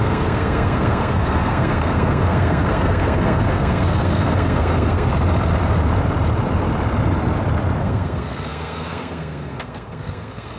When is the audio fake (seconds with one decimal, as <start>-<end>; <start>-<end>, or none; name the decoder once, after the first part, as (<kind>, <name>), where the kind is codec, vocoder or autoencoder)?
0.0-5.1 (codec, SNAC); 7.8-10.6